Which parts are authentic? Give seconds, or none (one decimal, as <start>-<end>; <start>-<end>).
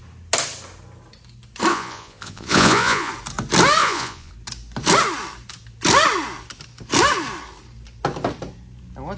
0.0-1.7; 3.1-3.8; 4.3-9.2